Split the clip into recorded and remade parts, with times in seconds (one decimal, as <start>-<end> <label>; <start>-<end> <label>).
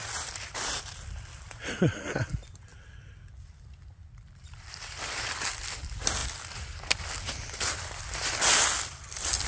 0.0-6.2 remade; 6.2-7.2 recorded; 7.2-9.5 remade